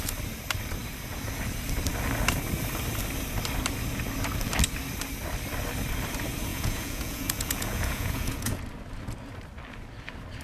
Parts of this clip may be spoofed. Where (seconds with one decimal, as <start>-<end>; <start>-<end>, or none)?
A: 6.5-8.6